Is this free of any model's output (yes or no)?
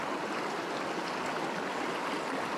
yes